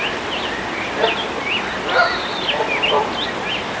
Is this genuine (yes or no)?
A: yes